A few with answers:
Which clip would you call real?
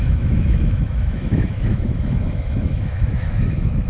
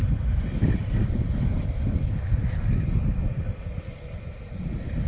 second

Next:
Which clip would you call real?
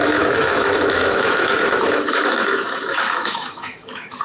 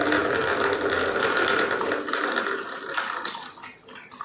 second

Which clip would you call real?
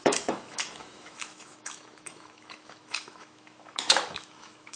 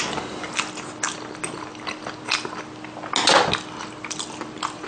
second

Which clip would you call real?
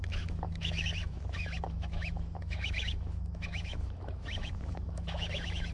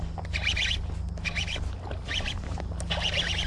second